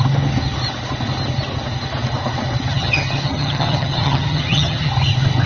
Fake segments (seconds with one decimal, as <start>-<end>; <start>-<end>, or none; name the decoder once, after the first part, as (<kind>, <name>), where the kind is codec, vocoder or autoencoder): 2.7-4.9 (vocoder, HiFi-GAN)